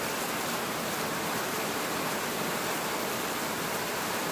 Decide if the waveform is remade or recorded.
recorded